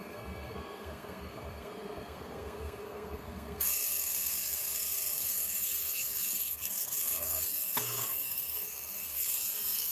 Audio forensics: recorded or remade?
remade